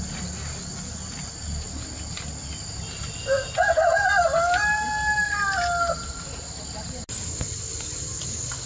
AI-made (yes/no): no